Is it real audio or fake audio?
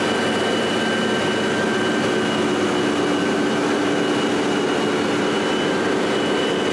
real